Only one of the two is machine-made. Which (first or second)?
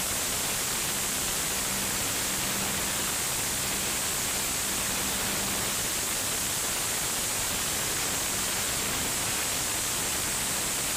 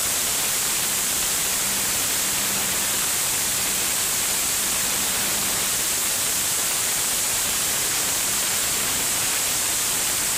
second